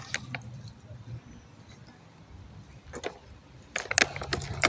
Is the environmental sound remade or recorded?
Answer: recorded